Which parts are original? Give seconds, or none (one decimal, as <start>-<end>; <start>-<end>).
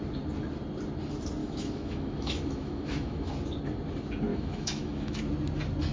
0.0-1.4; 3.3-4.3; 5.2-5.9